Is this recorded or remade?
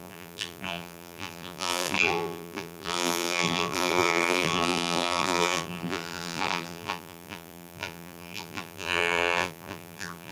remade